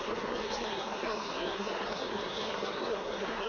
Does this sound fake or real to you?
fake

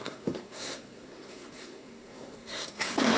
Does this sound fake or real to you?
fake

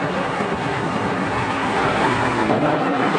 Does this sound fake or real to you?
fake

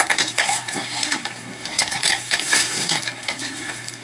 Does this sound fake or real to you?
fake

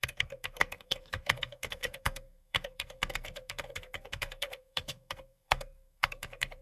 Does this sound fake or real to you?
fake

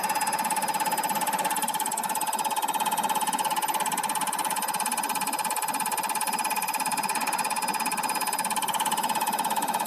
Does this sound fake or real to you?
real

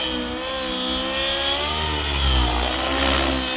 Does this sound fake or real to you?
real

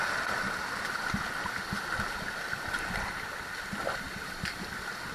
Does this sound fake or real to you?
real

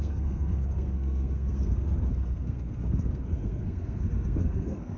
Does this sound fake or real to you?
fake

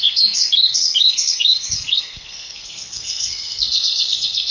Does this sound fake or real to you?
fake